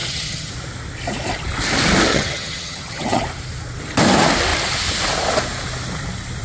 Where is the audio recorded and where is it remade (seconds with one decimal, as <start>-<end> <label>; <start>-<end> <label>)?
0.0-0.5 remade; 0.5-2.1 recorded; 2.1-3.2 remade; 3.2-6.4 recorded

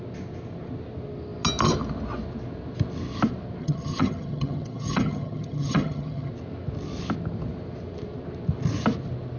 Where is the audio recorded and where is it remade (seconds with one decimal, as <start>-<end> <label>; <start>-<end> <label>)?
0.0-3.6 recorded; 3.6-6.3 remade; 6.3-9.4 recorded